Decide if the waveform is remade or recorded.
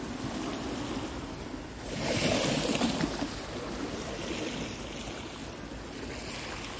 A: recorded